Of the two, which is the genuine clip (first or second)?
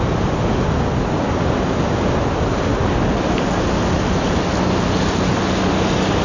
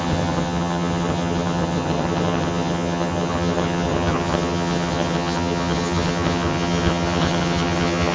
first